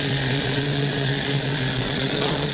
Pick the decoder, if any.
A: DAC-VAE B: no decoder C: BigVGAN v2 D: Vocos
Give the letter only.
D